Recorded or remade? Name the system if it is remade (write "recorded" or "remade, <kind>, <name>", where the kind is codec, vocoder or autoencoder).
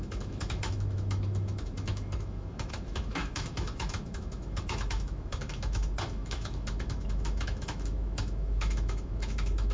remade, autoencoder, DAC-VAE